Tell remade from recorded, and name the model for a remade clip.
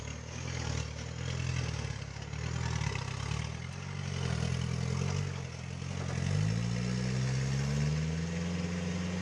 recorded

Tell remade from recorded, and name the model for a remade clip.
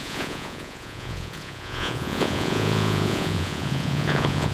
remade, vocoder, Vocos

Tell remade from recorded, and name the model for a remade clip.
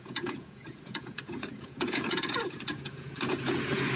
remade, vocoder, Vocos